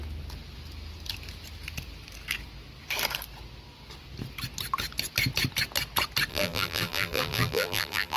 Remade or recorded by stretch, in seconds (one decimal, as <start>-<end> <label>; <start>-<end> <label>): 0.0-6.3 recorded; 6.3-8.2 remade